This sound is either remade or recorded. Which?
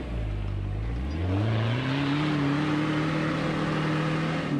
recorded